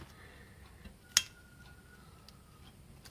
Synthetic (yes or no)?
no